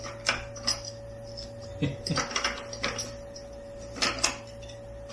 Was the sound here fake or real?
real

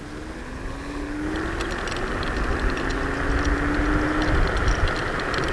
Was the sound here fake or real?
real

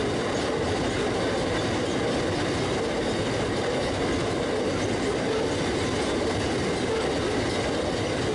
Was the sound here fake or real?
real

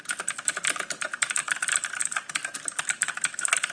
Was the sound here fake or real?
real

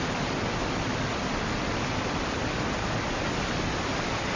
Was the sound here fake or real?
real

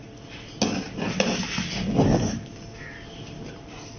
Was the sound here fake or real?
real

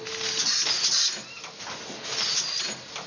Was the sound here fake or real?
real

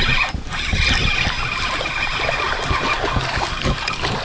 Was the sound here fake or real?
real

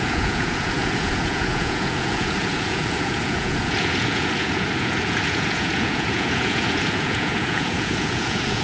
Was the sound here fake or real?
fake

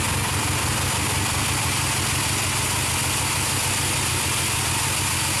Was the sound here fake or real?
real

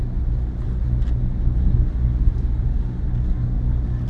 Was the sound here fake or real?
real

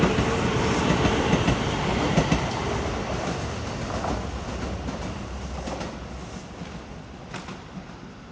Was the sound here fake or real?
real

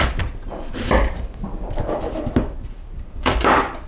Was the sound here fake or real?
fake